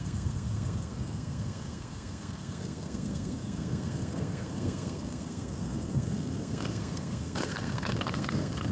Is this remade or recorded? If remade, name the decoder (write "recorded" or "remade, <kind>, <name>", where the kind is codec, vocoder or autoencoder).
remade, codec, SNAC